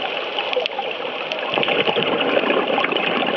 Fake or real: real